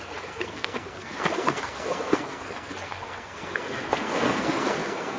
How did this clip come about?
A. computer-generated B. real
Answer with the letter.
A